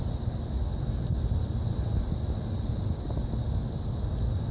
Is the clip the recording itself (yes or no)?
yes